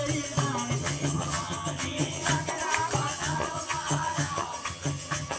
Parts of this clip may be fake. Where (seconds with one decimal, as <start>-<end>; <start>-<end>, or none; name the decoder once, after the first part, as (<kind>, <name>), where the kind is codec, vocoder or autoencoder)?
0.8-2.5 (vocoder, HiFi-GAN); 3.1-5.4